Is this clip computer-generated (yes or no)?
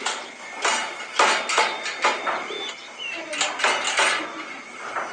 no